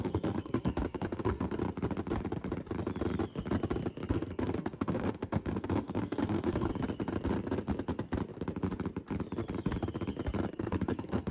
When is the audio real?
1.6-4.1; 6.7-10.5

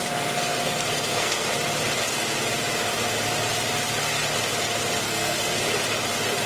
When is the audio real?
1.5-5.0; 5.5-6.5

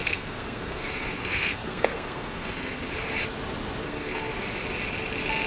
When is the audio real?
2.9-3.8; 4.3-5.5

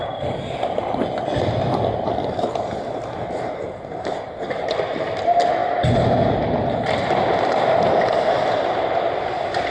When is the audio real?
0.0-9.7

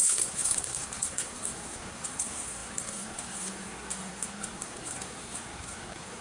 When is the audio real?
none

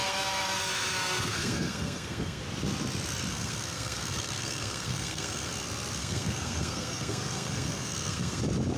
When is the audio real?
2.4-3.3; 5.5-6.0; 8.4-8.8